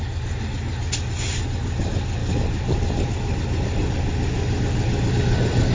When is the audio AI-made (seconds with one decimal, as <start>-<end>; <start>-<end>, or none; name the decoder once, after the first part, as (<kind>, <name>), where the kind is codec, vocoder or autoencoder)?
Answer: none